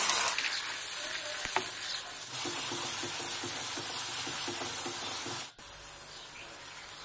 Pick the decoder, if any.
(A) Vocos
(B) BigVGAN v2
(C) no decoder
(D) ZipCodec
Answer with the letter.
C